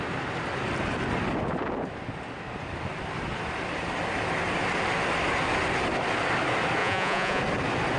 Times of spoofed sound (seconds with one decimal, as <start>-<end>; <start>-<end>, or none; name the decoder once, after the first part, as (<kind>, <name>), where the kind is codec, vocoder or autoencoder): 6.8-7.4 (vocoder, Vocos)